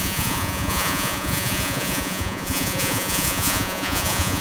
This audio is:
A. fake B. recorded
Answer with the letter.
A